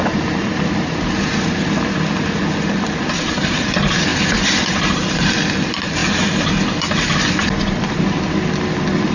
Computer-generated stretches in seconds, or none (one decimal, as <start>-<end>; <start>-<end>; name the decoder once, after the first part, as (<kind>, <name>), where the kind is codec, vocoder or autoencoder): none